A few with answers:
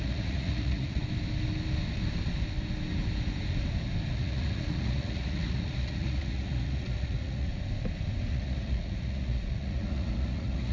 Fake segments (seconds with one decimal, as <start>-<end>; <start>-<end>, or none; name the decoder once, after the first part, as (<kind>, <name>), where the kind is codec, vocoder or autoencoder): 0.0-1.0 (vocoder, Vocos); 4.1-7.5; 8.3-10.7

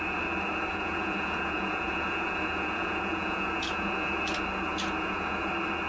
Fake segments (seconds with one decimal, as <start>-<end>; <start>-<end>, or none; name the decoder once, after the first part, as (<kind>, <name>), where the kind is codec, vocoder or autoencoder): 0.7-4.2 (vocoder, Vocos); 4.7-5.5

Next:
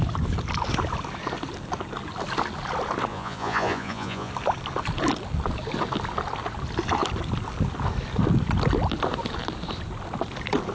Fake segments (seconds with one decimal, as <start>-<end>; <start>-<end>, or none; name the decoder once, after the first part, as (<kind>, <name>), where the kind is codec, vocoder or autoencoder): 3.1-4.3 (vocoder, Vocos)